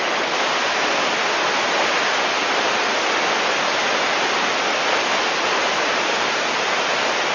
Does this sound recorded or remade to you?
recorded